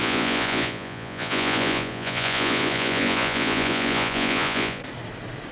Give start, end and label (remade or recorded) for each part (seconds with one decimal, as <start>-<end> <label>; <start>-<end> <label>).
0.0-4.8 remade; 4.8-5.5 recorded